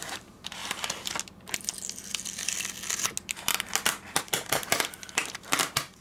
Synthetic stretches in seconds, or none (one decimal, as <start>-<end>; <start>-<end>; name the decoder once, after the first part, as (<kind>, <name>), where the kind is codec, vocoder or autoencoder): 0.0-0.6 (vocoder, BigVGAN v2); 4.2-6.0